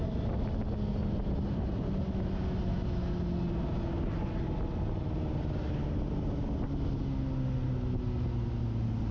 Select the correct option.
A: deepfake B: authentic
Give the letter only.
B